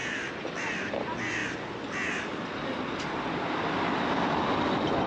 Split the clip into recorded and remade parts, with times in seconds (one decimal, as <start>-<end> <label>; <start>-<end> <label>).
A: 0.0-0.5 remade; 0.5-5.1 recorded